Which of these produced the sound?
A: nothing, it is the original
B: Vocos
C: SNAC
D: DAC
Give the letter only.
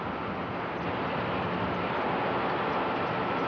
A